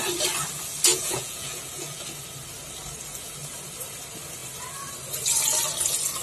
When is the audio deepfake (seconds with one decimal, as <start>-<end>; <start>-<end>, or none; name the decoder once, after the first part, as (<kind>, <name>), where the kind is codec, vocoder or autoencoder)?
0.9-2.0 (vocoder, Vocos)